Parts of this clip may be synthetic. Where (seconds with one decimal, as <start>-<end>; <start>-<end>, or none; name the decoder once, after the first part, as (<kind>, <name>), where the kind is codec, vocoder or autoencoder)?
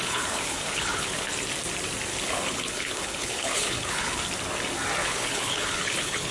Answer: 0.0-1.3 (codec, HILCodec); 2.1-4.2; 5.0-6.3